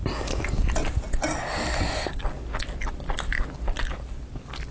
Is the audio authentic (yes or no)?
yes